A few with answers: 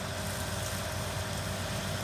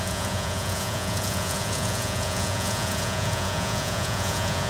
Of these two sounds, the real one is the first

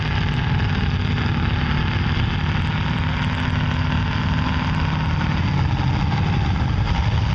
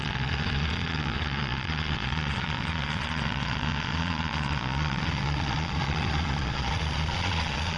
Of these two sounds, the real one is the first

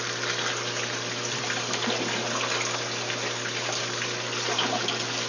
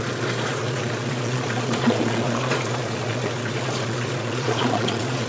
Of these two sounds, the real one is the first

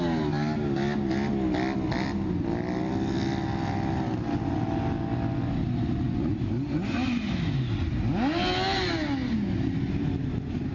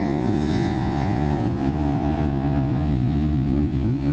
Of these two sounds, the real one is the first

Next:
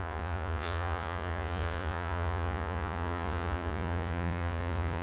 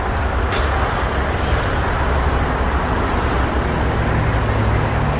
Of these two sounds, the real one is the second